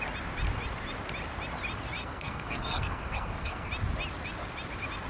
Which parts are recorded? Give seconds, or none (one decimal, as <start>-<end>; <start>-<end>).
0.0-2.0; 3.7-5.1